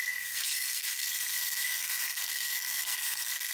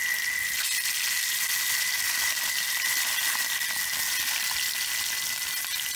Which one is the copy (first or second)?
first